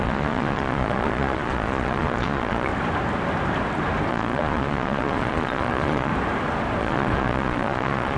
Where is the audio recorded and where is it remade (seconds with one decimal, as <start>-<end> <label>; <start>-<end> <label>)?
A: 0.0-2.7 remade; 2.7-4.1 recorded; 4.1-6.1 remade; 6.1-6.8 recorded; 6.8-8.2 remade